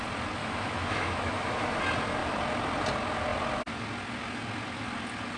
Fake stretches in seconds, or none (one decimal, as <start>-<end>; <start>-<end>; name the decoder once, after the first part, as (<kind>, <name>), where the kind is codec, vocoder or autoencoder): 0.4-1.8 (autoencoder, DAC-VAE)

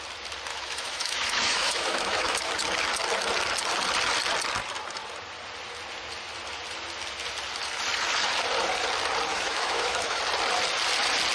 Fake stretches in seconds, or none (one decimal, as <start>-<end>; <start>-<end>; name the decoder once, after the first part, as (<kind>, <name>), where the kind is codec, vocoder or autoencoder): 0.5-2.5 (autoencoder, DAC-VAE); 9.3-10.2